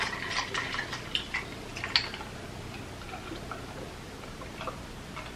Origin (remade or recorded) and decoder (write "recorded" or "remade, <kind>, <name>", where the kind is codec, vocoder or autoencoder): recorded